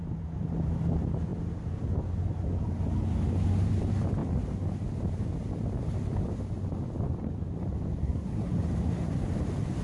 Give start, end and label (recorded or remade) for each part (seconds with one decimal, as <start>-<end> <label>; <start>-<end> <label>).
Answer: 0.0-8.0 recorded; 8.0-8.5 remade; 8.5-9.8 recorded

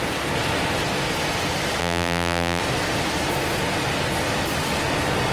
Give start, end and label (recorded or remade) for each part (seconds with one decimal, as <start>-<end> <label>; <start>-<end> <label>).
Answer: 0.0-1.8 recorded; 1.8-2.6 remade; 2.6-5.3 recorded

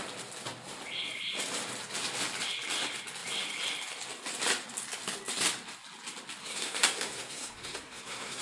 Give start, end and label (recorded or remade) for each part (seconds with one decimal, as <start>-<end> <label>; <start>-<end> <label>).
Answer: 0.0-6.4 recorded; 6.4-8.4 remade